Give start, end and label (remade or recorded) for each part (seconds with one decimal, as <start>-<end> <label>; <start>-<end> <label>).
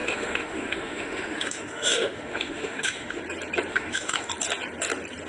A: 0.0-3.2 remade; 3.2-3.7 recorded; 3.7-4.3 remade; 4.3-5.3 recorded